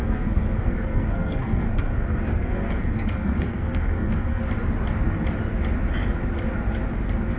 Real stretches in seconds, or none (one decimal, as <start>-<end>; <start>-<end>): 4.4-7.4

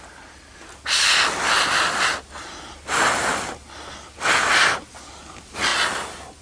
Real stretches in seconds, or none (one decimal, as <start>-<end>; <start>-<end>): 0.0-6.4

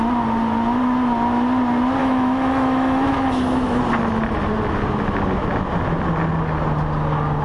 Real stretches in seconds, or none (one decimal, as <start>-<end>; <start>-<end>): 0.0-2.0; 3.8-7.4

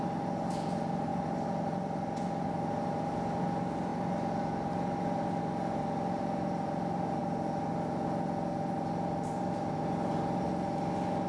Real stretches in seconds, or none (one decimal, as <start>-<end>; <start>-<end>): 0.0-11.3

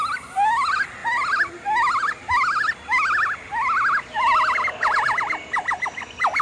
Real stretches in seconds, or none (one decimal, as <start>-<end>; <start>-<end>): 0.0-6.4

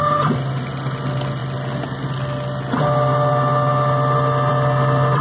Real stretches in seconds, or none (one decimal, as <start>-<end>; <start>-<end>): 0.0-5.2